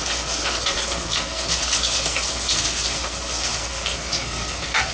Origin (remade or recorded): remade